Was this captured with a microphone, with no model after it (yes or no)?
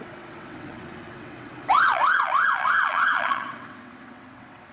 no